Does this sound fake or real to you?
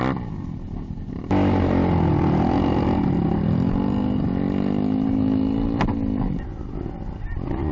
real